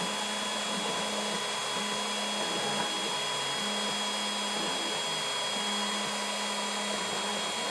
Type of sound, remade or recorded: recorded